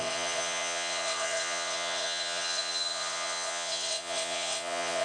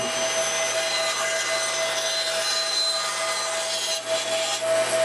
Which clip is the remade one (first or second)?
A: first